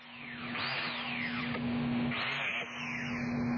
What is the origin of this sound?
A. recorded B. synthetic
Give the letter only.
A